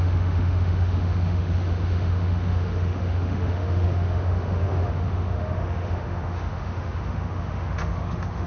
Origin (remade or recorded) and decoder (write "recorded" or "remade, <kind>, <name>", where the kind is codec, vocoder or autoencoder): remade, autoencoder, DAC-VAE